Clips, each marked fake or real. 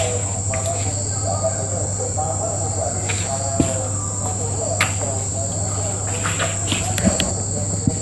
real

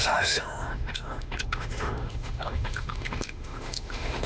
fake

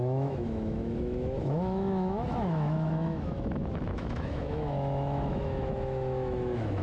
fake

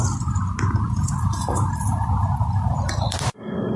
real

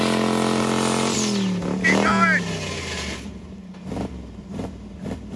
real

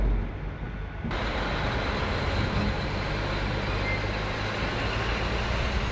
real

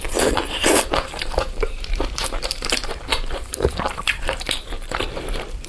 fake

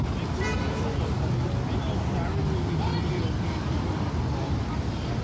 real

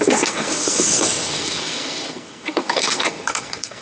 fake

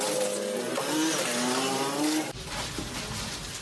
real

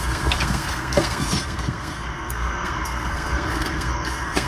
fake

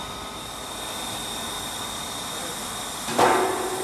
real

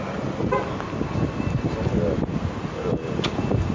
real